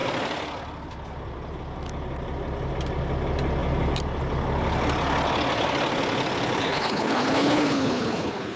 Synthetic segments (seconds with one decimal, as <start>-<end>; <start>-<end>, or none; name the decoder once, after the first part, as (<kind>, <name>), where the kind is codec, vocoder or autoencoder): 6.6-8.6 (codec, HILCodec)